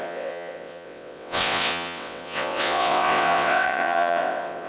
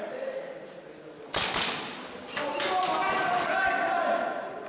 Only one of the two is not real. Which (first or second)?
first